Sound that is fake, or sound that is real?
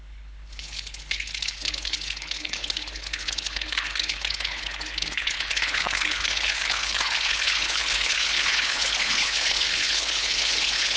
fake